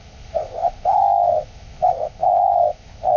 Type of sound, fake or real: fake